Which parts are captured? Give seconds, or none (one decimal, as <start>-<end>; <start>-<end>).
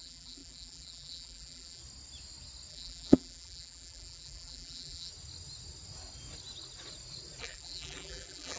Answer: 1.8-2.7; 5.1-7.4